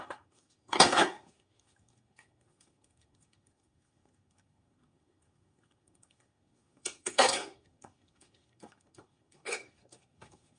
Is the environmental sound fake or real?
fake